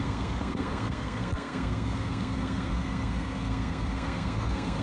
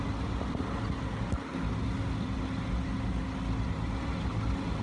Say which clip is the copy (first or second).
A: first